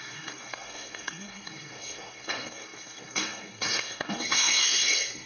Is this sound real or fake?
fake